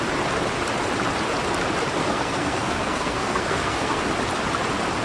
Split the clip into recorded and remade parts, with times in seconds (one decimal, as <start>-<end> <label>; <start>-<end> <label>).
0.0-2.0 recorded; 2.0-4.1 remade; 4.1-5.0 recorded